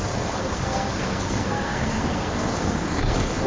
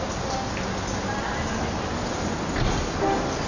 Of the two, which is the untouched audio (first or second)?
second